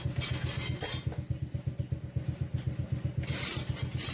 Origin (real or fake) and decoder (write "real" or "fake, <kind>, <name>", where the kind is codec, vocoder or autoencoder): real